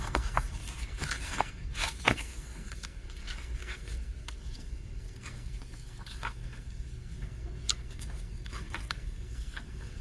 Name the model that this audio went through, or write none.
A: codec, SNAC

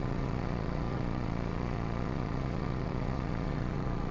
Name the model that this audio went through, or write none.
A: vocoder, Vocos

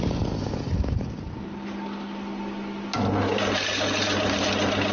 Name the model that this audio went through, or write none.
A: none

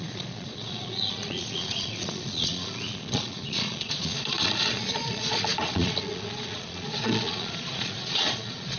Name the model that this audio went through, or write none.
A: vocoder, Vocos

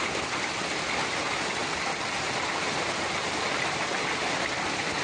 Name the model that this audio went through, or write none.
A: none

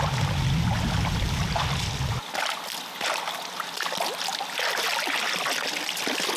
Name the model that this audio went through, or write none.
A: none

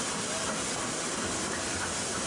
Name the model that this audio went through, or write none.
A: none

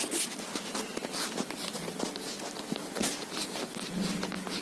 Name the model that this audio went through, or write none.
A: none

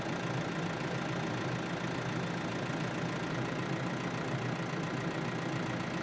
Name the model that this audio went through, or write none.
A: none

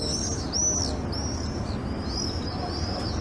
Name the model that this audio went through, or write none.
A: none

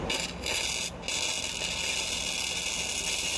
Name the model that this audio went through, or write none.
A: none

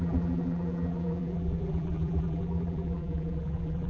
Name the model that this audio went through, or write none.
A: vocoder, BigVGAN v2